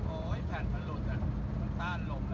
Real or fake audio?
real